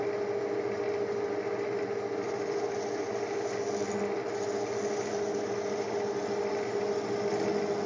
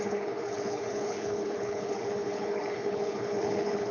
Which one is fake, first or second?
second